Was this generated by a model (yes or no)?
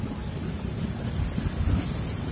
no